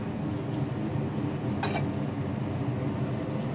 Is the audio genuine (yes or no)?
yes